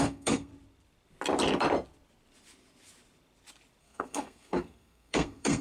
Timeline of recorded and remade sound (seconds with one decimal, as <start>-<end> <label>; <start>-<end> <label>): 0.0-0.5 remade; 0.5-3.8 recorded; 3.8-5.6 remade

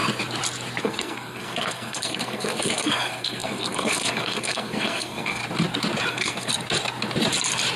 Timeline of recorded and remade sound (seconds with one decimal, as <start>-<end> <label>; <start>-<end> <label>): 0.0-0.8 recorded; 0.8-5.4 remade; 5.4-6.1 recorded; 6.1-6.5 remade; 6.5-7.8 recorded